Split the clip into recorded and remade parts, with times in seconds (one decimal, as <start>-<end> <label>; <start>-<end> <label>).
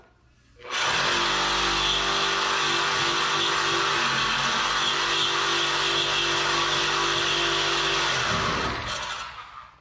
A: 0.0-9.8 recorded